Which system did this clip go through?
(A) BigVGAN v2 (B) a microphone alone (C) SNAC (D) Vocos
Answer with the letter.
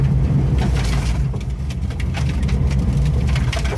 B